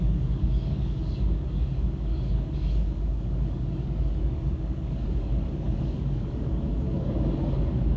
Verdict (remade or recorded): remade